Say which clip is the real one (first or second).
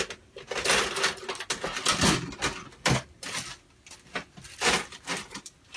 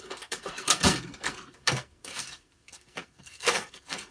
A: first